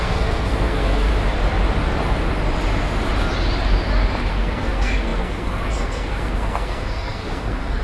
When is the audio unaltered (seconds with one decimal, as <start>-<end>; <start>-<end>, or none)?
1.1-4.3